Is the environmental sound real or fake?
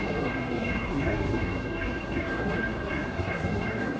fake